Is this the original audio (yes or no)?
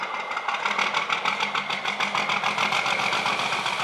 yes